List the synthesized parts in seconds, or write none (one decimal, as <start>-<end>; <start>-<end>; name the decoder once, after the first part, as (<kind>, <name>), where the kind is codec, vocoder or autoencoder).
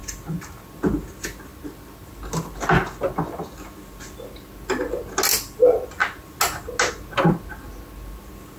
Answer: none